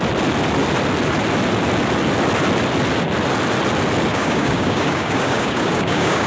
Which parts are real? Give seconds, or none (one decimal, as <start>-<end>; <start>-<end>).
0.0-4.1